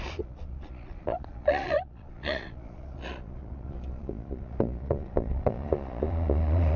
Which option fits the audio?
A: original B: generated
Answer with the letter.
B